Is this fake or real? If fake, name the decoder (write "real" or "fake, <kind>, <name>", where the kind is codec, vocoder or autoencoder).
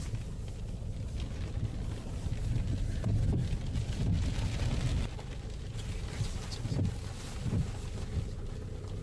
real